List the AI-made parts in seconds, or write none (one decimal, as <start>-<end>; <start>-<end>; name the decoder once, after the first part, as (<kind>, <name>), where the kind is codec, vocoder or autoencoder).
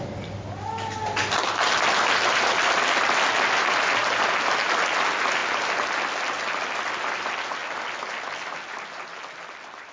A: none